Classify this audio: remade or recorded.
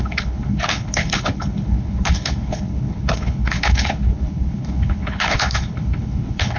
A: remade